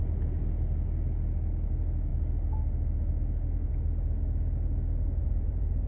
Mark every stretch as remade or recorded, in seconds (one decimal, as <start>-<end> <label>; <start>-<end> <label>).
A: 0.0-5.2 recorded; 5.2-5.9 remade